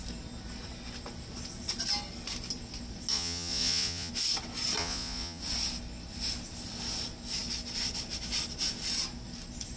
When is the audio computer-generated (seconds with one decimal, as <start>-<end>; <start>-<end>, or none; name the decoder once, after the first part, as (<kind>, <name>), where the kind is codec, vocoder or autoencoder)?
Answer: 3.1-4.1 (vocoder, Vocos); 4.8-5.4